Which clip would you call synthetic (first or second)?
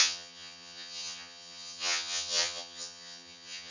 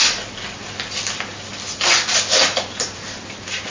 first